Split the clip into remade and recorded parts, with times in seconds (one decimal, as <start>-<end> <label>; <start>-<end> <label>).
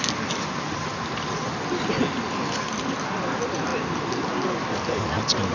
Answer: 0.0-5.5 recorded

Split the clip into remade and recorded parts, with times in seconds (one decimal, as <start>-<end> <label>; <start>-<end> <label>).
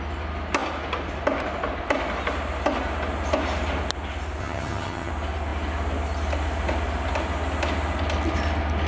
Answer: 0.0-4.4 recorded; 4.4-5.1 remade; 5.1-8.9 recorded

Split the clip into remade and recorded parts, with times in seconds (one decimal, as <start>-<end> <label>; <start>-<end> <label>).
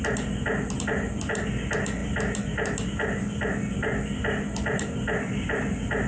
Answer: 0.0-6.1 recorded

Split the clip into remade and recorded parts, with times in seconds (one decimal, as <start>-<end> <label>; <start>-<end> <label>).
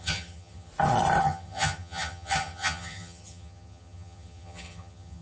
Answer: 0.0-0.7 remade; 0.7-1.2 recorded; 1.2-5.2 remade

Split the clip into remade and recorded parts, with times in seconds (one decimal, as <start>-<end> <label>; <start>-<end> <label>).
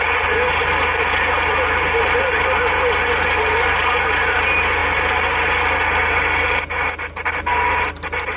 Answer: 0.0-8.4 recorded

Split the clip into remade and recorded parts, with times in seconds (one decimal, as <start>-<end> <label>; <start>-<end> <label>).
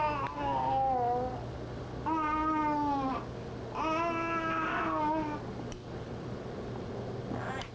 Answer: 0.0-7.7 recorded